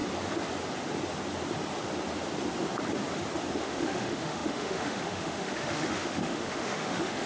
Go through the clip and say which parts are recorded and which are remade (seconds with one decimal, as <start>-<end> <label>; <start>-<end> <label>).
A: 0.0-3.6 recorded; 3.6-7.3 remade